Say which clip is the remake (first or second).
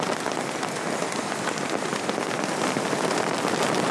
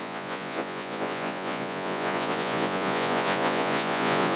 second